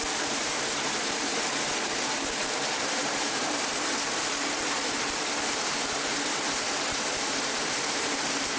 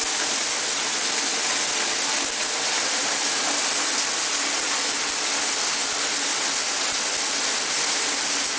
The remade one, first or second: first